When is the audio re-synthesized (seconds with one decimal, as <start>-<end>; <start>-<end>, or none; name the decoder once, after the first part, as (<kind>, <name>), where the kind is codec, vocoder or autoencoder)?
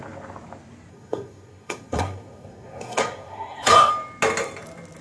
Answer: 0.9-3.9 (codec, SNAC)